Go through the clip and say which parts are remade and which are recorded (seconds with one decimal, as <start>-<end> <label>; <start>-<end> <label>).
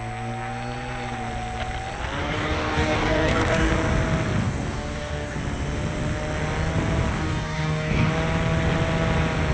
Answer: 0.0-2.2 recorded; 2.2-3.7 remade; 3.7-4.4 recorded; 4.4-5.4 remade; 5.4-7.1 recorded; 7.1-8.1 remade; 8.1-9.5 recorded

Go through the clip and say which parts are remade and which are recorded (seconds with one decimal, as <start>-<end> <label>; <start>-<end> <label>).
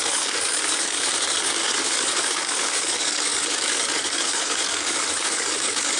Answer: 0.0-6.0 remade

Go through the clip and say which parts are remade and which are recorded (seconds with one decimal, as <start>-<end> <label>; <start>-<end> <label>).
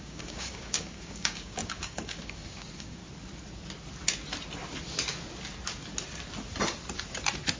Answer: 0.0-3.0 remade; 3.0-7.6 recorded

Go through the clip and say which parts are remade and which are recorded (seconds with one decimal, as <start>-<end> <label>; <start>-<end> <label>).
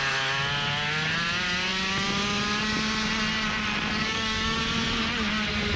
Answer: 0.0-3.9 recorded; 3.9-4.6 remade; 4.6-5.8 recorded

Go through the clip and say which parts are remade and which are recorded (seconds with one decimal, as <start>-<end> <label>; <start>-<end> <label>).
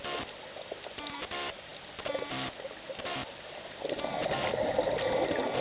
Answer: 0.0-5.6 recorded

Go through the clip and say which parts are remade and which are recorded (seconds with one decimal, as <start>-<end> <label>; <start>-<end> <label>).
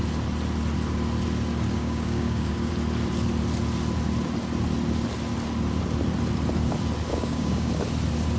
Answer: 0.0-1.8 recorded; 1.8-2.7 remade; 2.7-7.1 recorded; 7.1-7.7 remade; 7.7-8.4 recorded